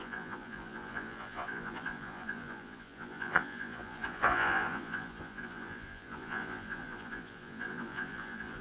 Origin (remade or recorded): remade